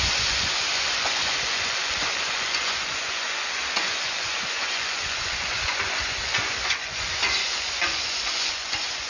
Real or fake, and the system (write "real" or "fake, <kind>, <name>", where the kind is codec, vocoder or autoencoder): fake, vocoder, Vocos